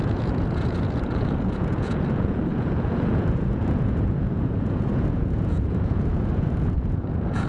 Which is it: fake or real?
fake